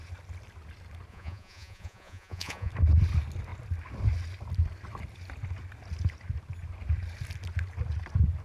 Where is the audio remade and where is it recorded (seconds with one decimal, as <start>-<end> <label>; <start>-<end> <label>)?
0.0-1.1 recorded; 1.1-2.7 remade; 2.7-8.4 recorded